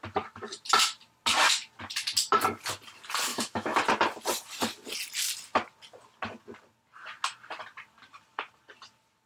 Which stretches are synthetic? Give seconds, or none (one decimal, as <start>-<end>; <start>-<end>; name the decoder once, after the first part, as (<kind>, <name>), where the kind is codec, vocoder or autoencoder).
3.3-3.8 (autoencoder, DAC-VAE)

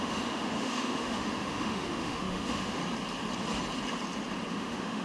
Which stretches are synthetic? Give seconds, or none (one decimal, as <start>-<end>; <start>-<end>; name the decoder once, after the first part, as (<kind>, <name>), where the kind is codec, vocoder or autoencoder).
0.0-2.8 (autoencoder, DAC-VAE); 4.5-5.0